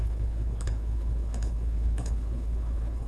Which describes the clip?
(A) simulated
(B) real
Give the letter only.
A